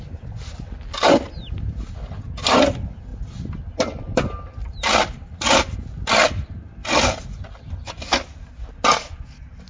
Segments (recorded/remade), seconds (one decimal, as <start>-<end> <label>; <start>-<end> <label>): 0.0-9.7 recorded